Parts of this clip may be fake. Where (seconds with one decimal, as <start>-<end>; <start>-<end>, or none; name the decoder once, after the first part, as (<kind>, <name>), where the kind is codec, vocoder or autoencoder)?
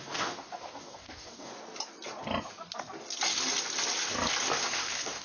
0.0-1.5 (codec, DAC); 4.6-5.2